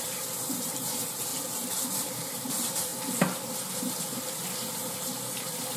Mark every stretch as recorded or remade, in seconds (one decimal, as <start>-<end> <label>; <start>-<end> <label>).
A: 0.0-1.3 remade; 1.3-1.9 recorded; 1.9-2.9 remade; 2.9-5.8 recorded